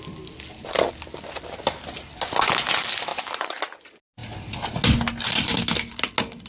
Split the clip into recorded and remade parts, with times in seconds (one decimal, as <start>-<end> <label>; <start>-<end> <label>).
0.0-3.1 recorded; 3.1-3.6 remade; 3.6-6.5 recorded